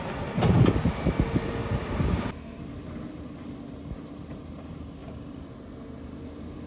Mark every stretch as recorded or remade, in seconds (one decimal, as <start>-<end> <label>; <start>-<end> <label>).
0.0-6.7 recorded